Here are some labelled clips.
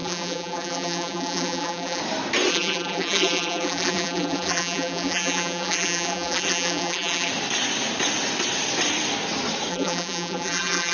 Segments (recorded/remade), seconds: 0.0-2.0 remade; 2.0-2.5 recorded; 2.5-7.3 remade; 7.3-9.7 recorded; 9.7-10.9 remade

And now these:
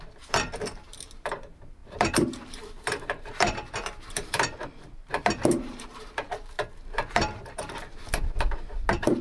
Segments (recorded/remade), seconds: 0.0-9.2 remade